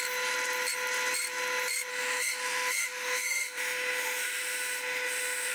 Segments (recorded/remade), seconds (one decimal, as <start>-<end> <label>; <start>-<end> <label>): 0.0-1.9 recorded; 1.9-5.5 remade